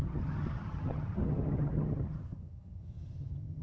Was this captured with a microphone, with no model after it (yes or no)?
no